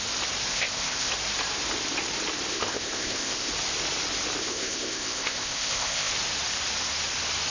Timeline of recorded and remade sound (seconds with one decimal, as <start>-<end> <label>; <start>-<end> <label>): 0.0-0.5 recorded; 0.5-1.1 remade; 1.1-2.5 recorded; 2.5-3.5 remade; 3.5-4.4 recorded; 4.4-6.1 remade; 6.1-7.5 recorded